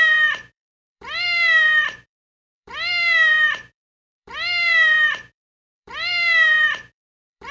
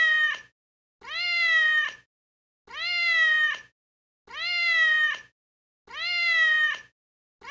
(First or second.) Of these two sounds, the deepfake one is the first